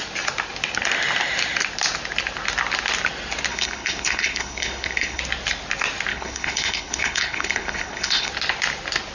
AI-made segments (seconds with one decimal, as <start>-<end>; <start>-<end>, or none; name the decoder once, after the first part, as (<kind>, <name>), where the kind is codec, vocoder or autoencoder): 3.5-5.2 (codec, HILCodec); 6.1-8.3